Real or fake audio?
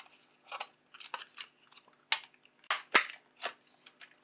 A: real